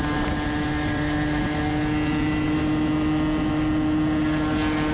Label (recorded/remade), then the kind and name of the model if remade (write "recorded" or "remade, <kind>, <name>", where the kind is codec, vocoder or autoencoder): recorded